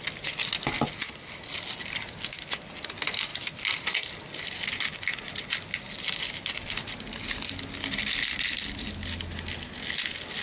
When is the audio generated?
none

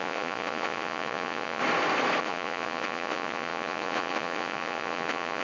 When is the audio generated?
0.0-1.6 (vocoder, Vocos); 2.2-5.4

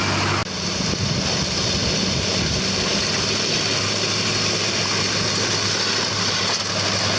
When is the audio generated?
none